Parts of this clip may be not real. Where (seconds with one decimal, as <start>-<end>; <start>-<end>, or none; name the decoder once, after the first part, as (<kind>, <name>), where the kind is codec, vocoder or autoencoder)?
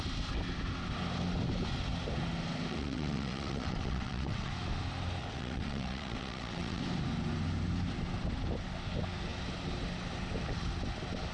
2.7-4.5 (vocoder, WaveNeXt); 5.2-6.8